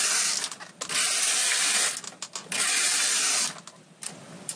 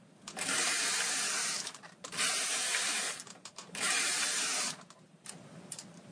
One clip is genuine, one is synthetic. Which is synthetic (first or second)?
second